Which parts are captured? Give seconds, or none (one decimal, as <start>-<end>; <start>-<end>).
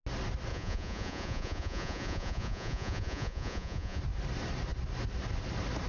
0.0-0.5; 4.0-5.9